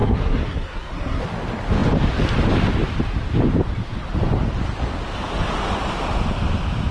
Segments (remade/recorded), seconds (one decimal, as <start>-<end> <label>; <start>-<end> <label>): 0.0-1.2 remade; 1.2-6.9 recorded